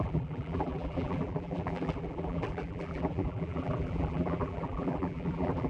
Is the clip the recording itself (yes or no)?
no